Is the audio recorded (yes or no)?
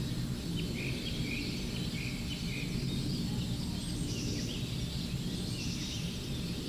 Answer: yes